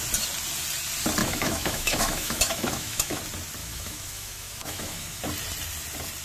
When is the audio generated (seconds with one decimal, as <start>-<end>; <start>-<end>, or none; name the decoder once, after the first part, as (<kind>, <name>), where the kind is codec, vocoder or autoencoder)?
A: 1.2-3.2 (autoencoder, DAC-VAE); 3.6-5.2